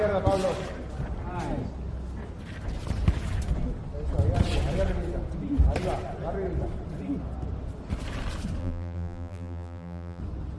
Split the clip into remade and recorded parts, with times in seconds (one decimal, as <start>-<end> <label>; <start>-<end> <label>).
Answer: 0.0-8.6 recorded; 8.6-10.2 remade; 10.2-10.6 recorded